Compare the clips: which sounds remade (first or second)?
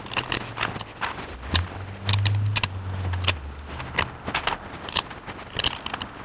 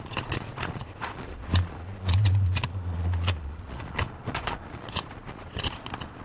second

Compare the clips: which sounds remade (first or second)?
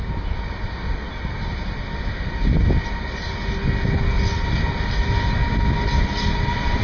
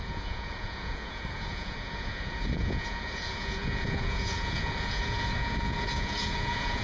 second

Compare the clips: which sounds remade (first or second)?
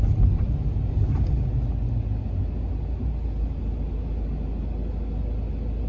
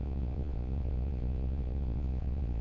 second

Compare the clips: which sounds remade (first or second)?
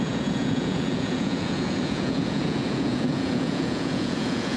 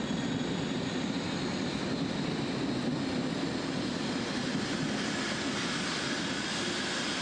first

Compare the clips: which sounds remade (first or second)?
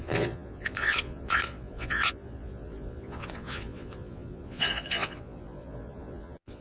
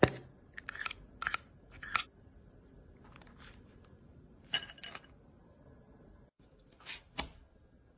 first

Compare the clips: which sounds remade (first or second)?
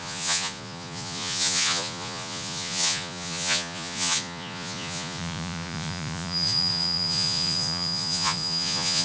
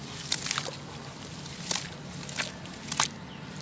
first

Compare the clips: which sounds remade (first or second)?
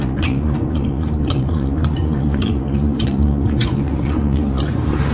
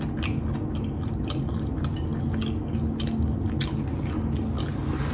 first